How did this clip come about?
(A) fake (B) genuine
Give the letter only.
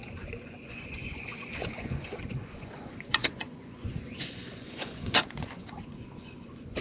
A